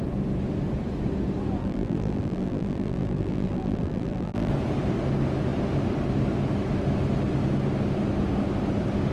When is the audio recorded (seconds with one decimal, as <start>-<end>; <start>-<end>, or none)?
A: 0.0-1.6; 4.5-9.1